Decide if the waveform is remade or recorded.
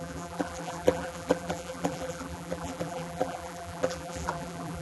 remade